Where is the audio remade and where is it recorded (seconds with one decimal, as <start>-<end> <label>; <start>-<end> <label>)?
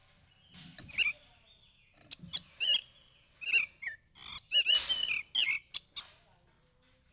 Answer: 0.0-7.1 recorded